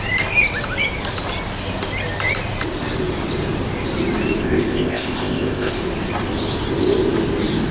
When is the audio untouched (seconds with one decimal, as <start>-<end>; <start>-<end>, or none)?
0.0-4.4; 5.7-7.7